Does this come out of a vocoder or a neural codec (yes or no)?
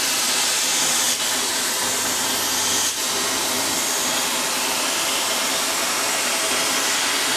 yes